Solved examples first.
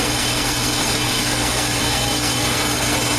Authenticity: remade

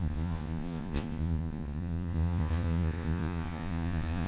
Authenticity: remade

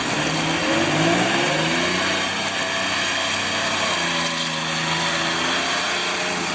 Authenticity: recorded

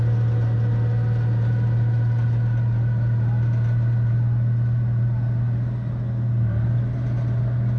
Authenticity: recorded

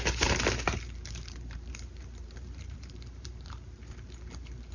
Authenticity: remade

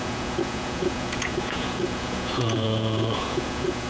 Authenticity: remade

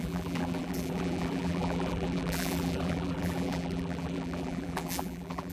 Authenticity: remade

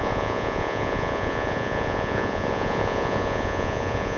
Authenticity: remade